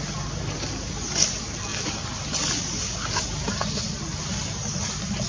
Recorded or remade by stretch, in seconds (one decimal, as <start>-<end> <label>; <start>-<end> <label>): 0.0-5.3 recorded

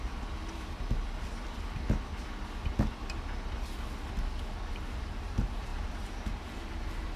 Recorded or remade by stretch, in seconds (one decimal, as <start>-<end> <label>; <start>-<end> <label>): 0.0-0.4 remade; 0.4-4.7 recorded; 4.7-7.2 remade

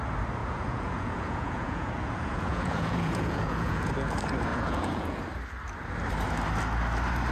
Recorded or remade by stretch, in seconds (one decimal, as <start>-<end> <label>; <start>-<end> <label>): 0.0-0.4 recorded; 0.4-3.9 remade; 3.9-4.5 recorded; 4.5-5.2 remade; 5.2-7.3 recorded

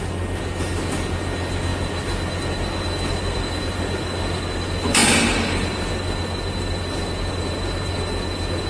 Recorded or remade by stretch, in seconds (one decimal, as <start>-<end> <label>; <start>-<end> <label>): 0.0-8.7 recorded

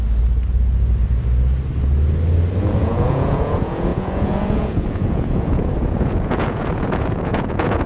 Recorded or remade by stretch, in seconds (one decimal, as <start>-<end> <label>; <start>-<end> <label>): 0.0-2.6 recorded; 2.6-7.9 remade

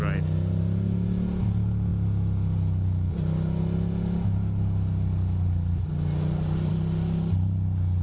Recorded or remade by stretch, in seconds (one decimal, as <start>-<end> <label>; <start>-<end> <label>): 0.0-8.0 recorded

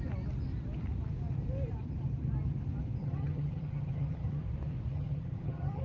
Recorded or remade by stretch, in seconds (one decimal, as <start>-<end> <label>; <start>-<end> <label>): 0.0-3.0 recorded; 3.0-4.4 remade; 4.4-4.9 recorded; 4.9-5.8 remade